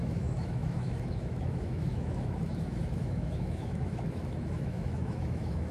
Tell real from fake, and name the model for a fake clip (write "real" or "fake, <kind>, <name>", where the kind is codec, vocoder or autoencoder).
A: fake, autoencoder, DAC-VAE